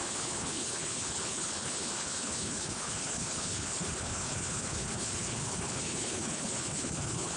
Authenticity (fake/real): fake